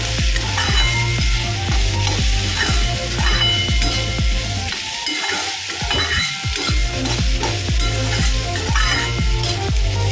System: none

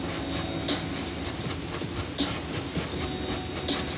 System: none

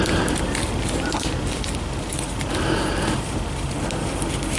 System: none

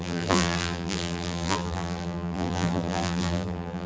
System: vocoder, BigVGAN v2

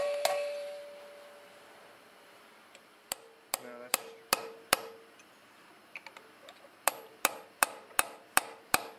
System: vocoder, BigVGAN v2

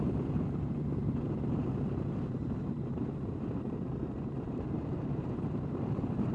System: vocoder, BigVGAN v2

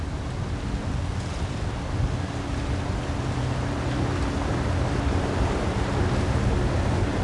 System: none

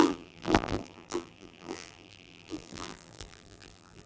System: vocoder, BigVGAN v2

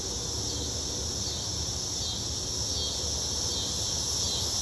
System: none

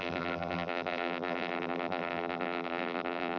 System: vocoder, BigVGAN v2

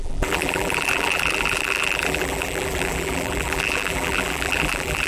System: vocoder, BigVGAN v2